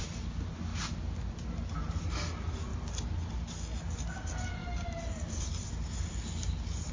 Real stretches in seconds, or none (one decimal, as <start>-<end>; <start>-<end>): 0.0-6.9